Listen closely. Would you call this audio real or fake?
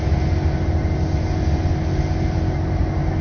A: real